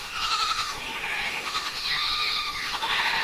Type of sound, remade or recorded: remade